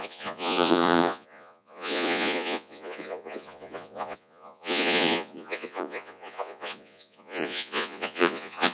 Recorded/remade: remade